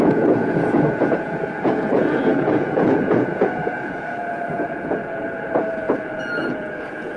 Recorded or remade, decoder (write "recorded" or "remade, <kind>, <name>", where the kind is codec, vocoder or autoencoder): remade, vocoder, Vocos